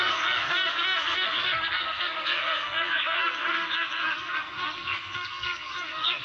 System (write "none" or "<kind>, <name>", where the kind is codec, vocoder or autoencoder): codec, SNAC